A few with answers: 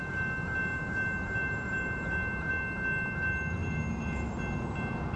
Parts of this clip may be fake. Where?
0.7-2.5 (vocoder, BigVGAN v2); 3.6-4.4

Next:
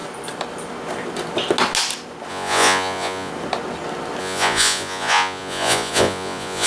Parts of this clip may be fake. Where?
2.3-3.3 (vocoder, Vocos); 4.2-6.7